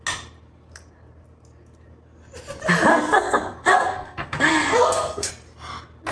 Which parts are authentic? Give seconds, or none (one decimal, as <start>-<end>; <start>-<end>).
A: 0.0-2.9; 5.3-6.1